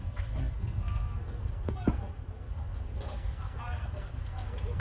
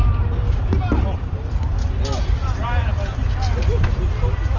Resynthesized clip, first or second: first